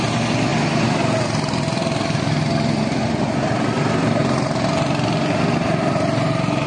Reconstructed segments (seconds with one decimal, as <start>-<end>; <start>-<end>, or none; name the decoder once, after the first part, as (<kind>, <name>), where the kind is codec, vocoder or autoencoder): 4.2-4.9 (vocoder, BigVGAN v2)